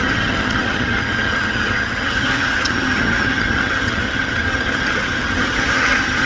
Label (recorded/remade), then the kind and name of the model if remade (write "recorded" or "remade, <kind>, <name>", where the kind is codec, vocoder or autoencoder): remade, vocoder, HiFi-GAN